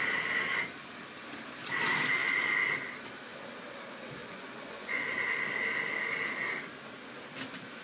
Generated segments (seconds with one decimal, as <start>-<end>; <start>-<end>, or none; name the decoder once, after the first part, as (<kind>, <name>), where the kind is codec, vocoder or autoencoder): 4.2-5.0 (vocoder, Vocos)